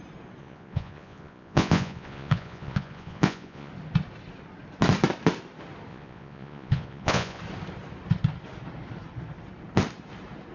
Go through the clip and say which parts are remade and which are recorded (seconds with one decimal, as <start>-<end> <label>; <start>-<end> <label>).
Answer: 0.0-0.4 recorded; 0.4-3.7 remade; 3.7-5.9 recorded; 5.9-7.4 remade; 7.4-10.5 recorded